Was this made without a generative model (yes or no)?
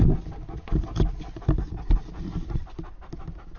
yes